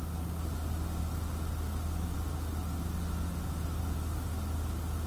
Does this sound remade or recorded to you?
recorded